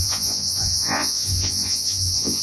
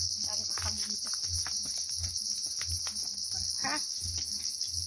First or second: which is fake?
first